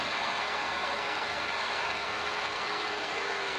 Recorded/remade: remade